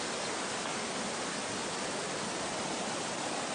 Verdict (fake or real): real